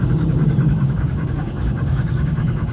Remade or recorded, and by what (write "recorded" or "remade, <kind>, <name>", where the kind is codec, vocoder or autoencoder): remade, codec, DAC